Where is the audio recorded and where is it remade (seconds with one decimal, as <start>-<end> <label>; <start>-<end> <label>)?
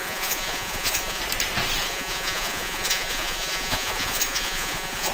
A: 0.0-1.2 remade; 1.2-1.8 recorded; 1.8-5.1 remade